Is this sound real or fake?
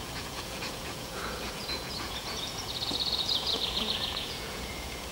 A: fake